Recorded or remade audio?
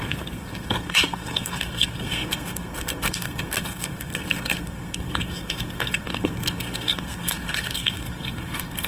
remade